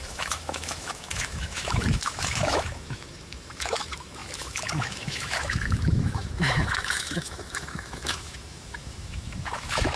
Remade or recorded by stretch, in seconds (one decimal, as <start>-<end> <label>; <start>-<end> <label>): 0.0-10.0 remade